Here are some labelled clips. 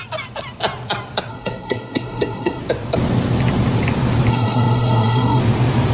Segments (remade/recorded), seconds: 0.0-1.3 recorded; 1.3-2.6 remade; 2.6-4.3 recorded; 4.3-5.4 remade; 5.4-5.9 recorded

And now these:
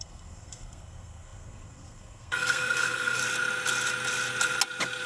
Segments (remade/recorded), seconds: 0.0-3.2 remade; 3.2-5.1 recorded

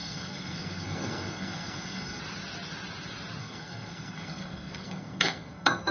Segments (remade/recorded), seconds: 0.0-2.2 remade; 2.2-3.4 recorded; 3.4-5.9 remade

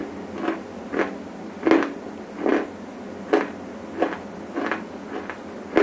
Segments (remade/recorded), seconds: 0.0-5.8 recorded